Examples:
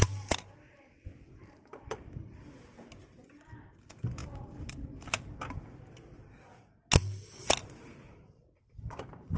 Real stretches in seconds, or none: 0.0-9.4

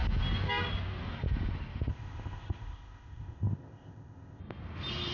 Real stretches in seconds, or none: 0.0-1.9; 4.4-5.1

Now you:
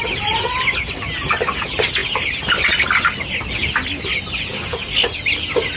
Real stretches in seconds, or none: 0.0-5.8